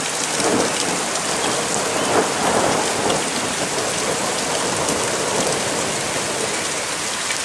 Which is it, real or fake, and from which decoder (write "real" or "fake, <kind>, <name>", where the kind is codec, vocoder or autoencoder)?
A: real